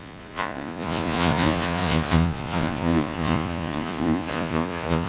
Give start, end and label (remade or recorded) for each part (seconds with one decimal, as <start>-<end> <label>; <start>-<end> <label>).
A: 0.0-5.1 remade